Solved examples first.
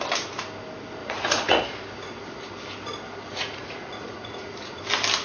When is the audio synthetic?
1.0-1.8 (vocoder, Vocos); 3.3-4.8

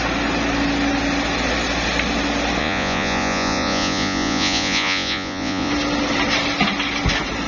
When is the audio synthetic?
2.6-5.7 (vocoder, Vocos)

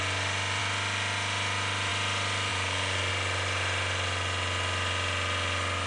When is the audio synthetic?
2.5-3.1 (vocoder, Vocos)

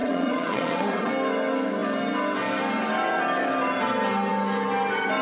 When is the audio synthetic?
0.0-1.1 (vocoder, Vocos)

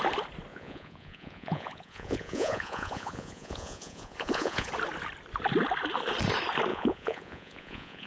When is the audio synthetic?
0.5-4.7 (vocoder, Vocos); 6.7-8.1

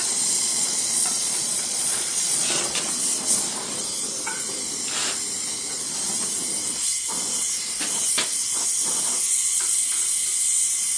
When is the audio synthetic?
0.5-2.9 (vocoder, Vocos); 9.3-9.8

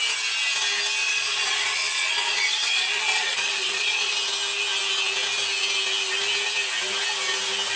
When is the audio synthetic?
1.0-4.1 (vocoder, Vocos)

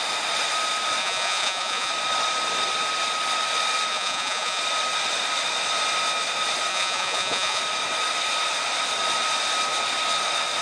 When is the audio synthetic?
1.0-1.9 (vocoder, Vocos); 3.9-4.6; 6.7-7.6